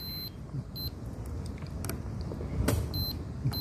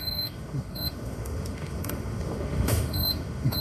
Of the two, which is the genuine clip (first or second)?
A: first